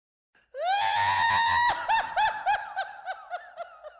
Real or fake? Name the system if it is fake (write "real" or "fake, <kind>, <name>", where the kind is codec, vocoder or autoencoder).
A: real